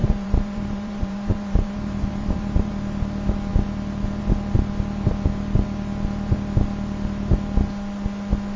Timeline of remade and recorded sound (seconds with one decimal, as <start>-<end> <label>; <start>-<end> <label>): 0.0-2.7 remade; 2.7-8.6 recorded